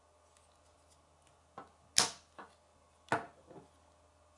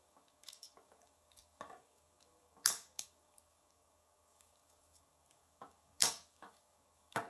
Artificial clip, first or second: second